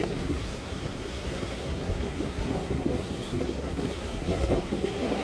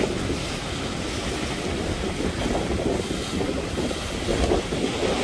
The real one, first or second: second